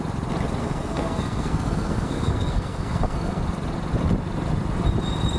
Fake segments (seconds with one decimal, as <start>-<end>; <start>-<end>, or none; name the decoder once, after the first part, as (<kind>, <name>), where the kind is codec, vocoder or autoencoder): 0.6-3.4 (codec, SNAC)